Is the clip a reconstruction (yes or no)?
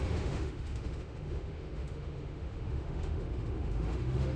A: yes